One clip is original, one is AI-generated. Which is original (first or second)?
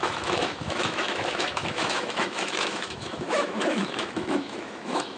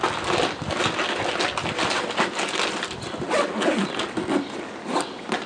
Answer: second